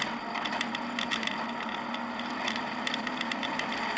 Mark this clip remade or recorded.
recorded